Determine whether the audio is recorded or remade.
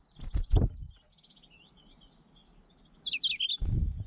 recorded